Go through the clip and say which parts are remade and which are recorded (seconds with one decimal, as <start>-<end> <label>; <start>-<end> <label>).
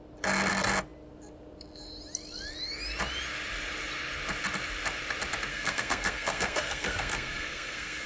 0.0-5.5 recorded; 5.5-8.1 remade